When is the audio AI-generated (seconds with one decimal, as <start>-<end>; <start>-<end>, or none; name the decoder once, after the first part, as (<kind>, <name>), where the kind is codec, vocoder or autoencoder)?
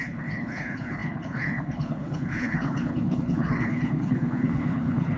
0.0-5.2 (codec, HILCodec)